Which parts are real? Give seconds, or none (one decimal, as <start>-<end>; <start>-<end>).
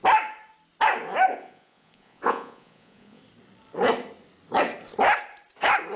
0.0-1.3; 3.2-6.0